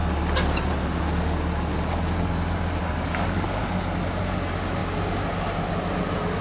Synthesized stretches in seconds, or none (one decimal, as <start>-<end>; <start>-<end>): 2.8-3.6